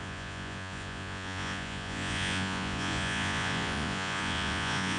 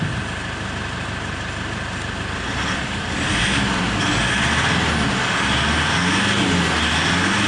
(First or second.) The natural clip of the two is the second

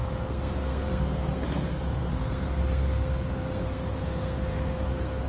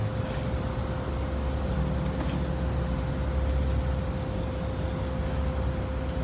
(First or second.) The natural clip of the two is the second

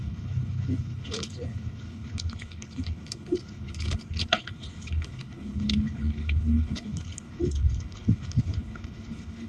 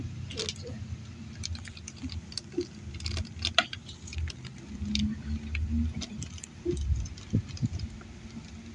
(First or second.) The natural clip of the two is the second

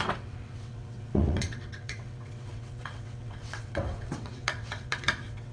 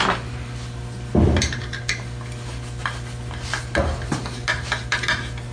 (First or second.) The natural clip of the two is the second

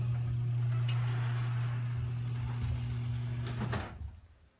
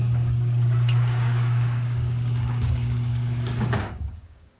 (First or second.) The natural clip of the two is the first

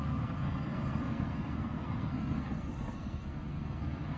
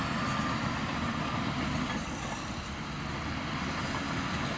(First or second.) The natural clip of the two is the second